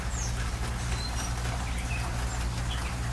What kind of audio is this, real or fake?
real